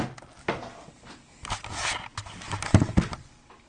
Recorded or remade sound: recorded